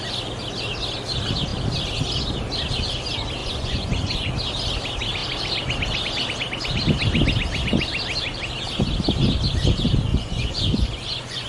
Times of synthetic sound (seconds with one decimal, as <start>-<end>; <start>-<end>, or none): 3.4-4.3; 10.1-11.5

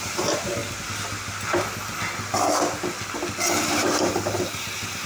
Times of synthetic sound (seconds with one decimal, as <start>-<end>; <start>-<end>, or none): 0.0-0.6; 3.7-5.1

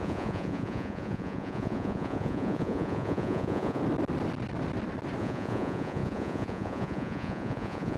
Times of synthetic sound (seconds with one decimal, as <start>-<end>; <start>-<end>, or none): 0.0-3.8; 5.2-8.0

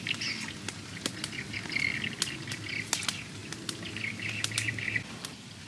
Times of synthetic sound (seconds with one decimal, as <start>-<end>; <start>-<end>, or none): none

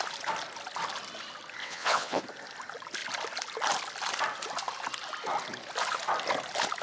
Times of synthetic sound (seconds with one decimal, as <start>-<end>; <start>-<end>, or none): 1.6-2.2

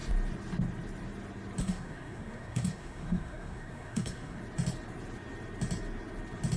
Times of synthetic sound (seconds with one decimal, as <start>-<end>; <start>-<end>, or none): 1.6-4.4